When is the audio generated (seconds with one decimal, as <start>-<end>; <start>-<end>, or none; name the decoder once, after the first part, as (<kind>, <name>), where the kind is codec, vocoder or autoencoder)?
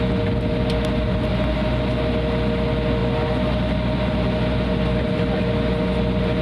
none